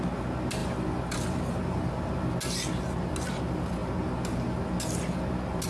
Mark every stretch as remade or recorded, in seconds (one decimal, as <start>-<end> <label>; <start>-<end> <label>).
0.0-5.7 recorded